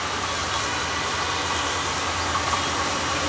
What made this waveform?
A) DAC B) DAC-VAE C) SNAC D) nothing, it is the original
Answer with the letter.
D